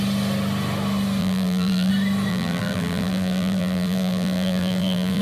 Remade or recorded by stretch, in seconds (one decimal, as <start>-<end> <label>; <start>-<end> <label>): 0.0-1.2 recorded; 1.2-1.9 remade; 1.9-2.3 recorded; 2.3-5.2 remade